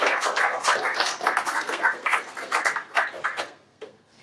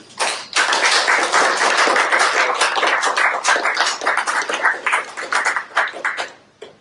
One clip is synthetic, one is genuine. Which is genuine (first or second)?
second